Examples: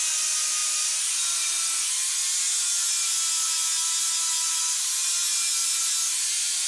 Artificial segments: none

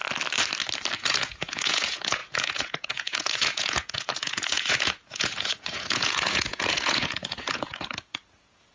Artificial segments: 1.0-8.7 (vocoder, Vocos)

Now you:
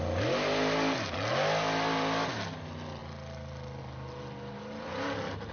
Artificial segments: none

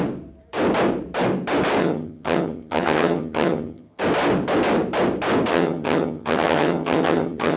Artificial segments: 1.8-4.0 (vocoder, HiFi-GAN); 5.5-7.6